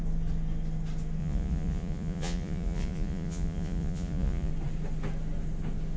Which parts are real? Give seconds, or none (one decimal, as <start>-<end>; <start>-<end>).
0.0-1.2; 4.5-6.0